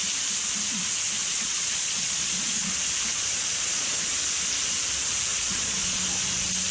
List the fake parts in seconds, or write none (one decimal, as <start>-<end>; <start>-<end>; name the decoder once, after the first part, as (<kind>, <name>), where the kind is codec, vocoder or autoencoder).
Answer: 1.2-2.7 (vocoder, Vocos); 3.1-4.1; 5.3-6.0